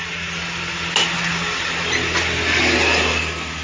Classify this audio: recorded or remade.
recorded